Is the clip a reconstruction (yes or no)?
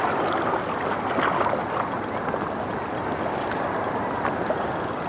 no